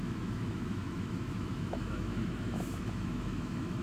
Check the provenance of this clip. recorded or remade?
remade